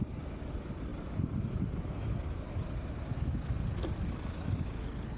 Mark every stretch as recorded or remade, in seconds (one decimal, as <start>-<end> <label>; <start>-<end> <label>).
0.0-5.2 recorded